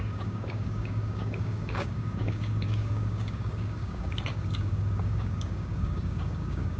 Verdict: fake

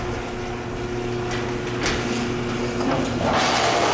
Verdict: real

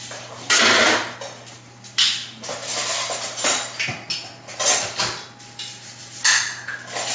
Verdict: real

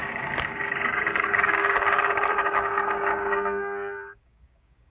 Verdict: fake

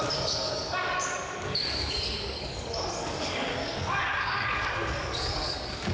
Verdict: fake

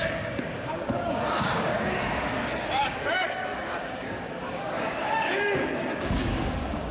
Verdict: fake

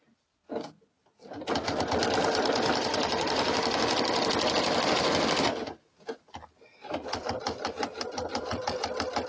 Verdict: real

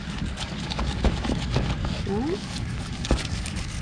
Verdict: fake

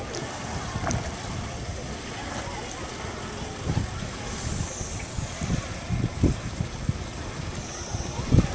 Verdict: real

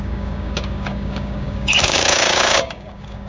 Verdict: fake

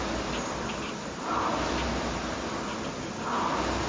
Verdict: real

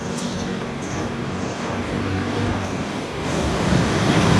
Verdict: fake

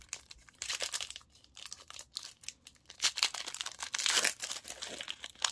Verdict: real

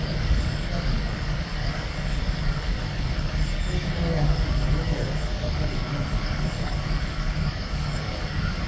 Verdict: fake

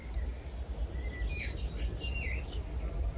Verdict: real